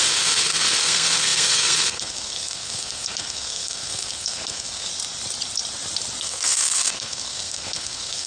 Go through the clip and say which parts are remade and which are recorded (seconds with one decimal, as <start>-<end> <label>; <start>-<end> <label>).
0.0-4.9 remade; 4.9-6.2 recorded; 6.2-8.3 remade